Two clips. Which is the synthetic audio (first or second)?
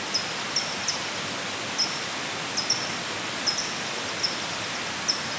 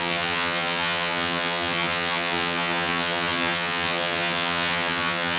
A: second